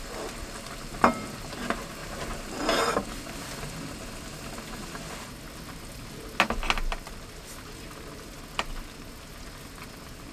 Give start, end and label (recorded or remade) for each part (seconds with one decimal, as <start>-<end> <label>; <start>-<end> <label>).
0.0-2.0 recorded; 2.0-2.6 remade; 2.6-10.3 recorded